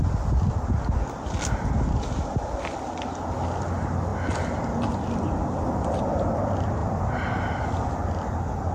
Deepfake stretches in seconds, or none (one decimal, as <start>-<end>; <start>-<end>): none